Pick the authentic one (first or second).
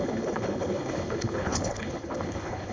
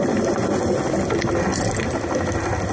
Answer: second